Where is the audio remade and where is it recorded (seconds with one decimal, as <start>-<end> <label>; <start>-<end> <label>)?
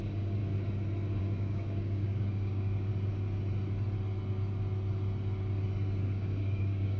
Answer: 0.0-0.4 remade; 0.4-1.2 recorded; 1.2-2.9 remade; 2.9-6.0 recorded; 6.0-7.0 remade